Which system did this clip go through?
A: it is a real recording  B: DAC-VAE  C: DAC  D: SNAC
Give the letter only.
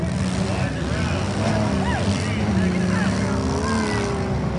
A